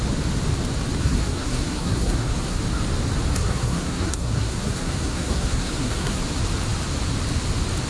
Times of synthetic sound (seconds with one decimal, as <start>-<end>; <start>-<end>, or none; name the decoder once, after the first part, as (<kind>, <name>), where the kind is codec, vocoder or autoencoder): 1.0-2.6 (codec, SNAC); 3.3-6.2